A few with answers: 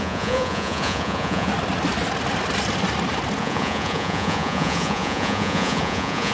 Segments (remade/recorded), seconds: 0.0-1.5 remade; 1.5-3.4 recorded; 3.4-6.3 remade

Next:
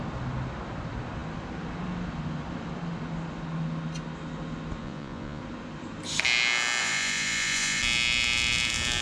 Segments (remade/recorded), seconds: 0.0-4.8 recorded; 4.8-5.4 remade; 5.4-6.8 recorded; 6.8-7.8 remade; 7.8-9.0 recorded

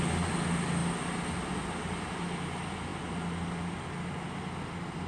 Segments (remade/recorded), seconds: 0.0-5.1 recorded

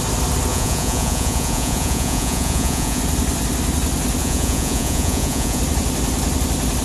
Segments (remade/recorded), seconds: 0.0-0.5 recorded; 0.5-3.0 remade; 3.0-4.2 recorded; 4.2-5.6 remade; 5.6-6.8 recorded

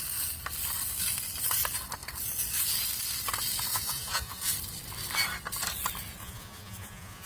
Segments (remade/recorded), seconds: 0.0-3.7 recorded; 3.7-4.5 remade; 4.5-6.2 recorded; 6.2-7.3 remade